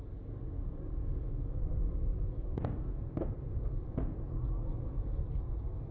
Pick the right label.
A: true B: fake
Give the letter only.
A